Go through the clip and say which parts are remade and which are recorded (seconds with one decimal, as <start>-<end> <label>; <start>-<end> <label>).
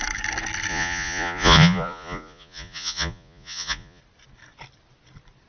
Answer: 0.0-0.7 recorded; 0.7-4.0 remade; 4.0-5.5 recorded